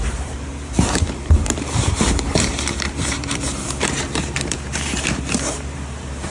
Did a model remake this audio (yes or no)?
yes